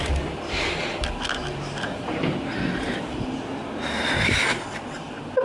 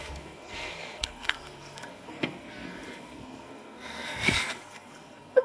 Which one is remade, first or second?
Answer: second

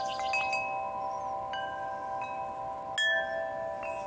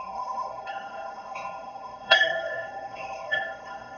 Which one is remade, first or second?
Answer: second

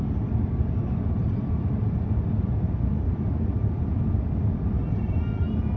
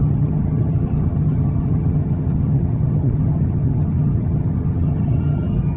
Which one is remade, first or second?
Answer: second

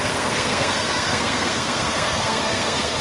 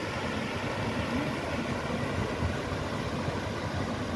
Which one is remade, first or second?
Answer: first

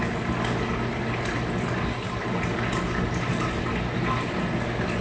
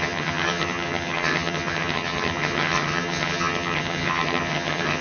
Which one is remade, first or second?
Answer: second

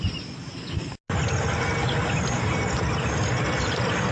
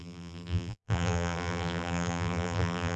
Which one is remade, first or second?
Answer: second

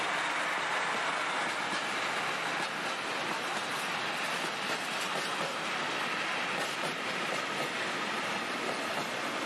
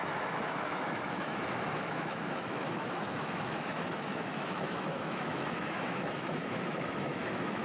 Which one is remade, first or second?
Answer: second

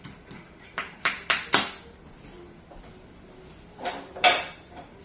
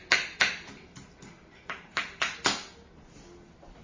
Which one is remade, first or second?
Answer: first